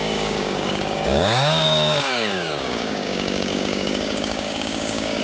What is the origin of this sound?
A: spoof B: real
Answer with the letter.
A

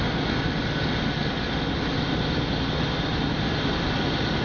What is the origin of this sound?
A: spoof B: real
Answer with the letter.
B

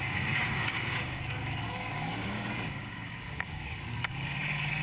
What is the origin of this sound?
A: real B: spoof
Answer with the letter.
B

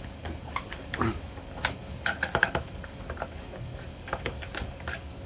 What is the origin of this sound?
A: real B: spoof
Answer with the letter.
B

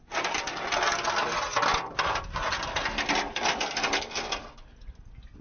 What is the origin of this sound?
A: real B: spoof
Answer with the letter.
A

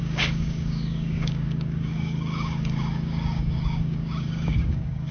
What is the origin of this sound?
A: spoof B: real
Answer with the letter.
A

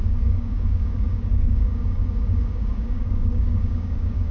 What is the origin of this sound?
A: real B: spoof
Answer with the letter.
B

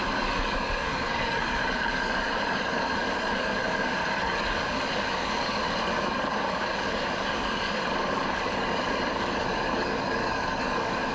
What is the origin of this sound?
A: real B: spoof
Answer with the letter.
B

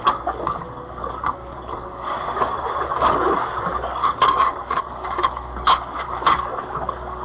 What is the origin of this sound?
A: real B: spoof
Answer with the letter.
B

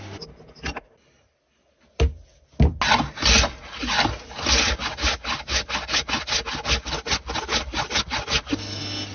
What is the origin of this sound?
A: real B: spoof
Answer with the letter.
A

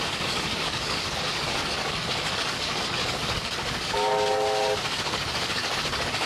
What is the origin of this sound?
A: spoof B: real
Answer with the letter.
A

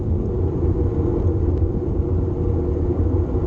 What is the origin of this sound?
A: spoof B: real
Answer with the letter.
B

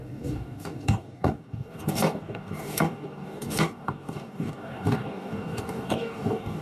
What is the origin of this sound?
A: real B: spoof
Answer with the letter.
B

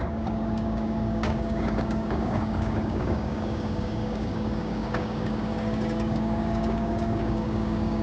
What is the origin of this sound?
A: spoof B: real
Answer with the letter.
A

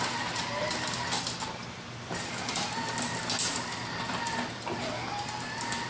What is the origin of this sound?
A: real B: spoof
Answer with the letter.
A